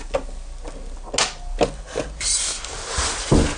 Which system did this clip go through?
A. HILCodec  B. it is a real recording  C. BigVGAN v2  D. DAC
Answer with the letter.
B